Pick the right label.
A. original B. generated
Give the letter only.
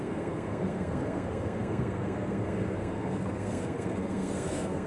B